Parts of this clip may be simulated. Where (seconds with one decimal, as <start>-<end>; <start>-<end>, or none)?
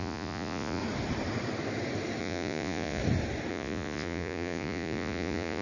0.0-0.8; 2.2-3.0; 3.5-5.6